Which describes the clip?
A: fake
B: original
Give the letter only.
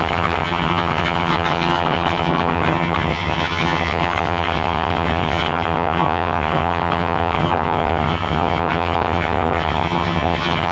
A